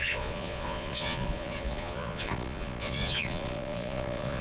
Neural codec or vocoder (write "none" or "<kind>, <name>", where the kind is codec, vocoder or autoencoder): vocoder, Vocos